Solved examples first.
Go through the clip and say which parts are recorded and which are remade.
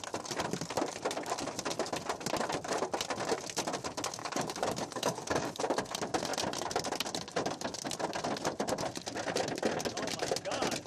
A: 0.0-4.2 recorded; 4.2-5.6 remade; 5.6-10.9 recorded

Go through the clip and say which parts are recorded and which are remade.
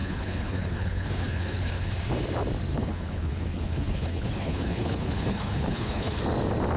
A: 0.0-1.9 remade; 1.9-2.7 recorded; 2.7-6.2 remade; 6.2-6.8 recorded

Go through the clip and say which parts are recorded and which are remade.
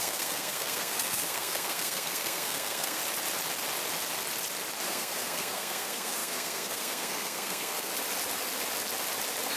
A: 0.0-3.0 remade; 3.0-4.9 recorded; 4.9-7.9 remade; 7.9-9.6 recorded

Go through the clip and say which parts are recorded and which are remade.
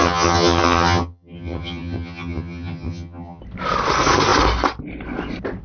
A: 0.0-3.4 remade; 3.4-5.6 recorded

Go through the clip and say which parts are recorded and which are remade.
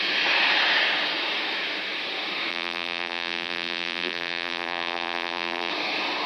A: 0.0-2.5 recorded; 2.5-5.7 remade; 5.7-6.3 recorded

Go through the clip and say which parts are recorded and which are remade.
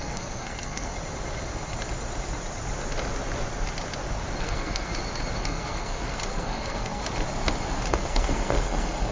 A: 0.0-0.9 remade; 0.9-4.4 recorded; 4.4-4.9 remade; 4.9-5.4 recorded; 5.4-7.0 remade; 7.0-7.9 recorded; 7.9-9.1 remade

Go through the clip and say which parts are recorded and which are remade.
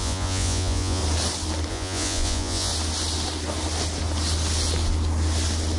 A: 0.0-1.0 remade; 1.0-1.7 recorded; 1.7-2.7 remade; 2.7-5.8 recorded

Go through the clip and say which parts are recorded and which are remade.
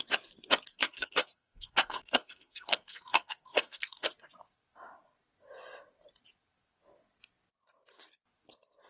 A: 0.0-0.7 recorded; 0.7-4.1 remade; 4.1-8.9 recorded